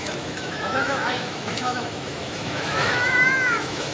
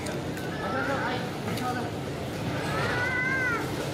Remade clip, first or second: first